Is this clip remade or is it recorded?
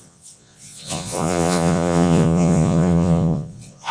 remade